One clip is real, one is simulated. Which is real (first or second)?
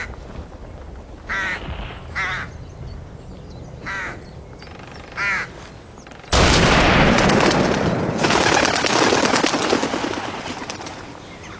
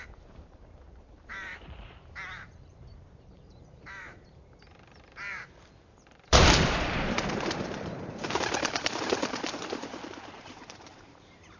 first